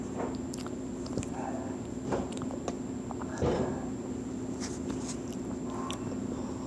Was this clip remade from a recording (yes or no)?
no